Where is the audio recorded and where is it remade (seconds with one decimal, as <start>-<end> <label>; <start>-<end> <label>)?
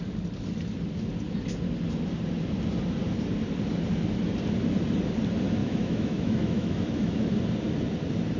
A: 0.0-5.6 recorded; 5.6-7.3 remade; 7.3-8.4 recorded